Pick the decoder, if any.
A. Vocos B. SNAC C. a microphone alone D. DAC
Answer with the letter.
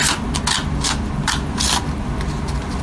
C